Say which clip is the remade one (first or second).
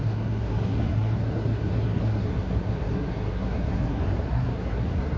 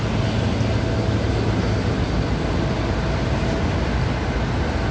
first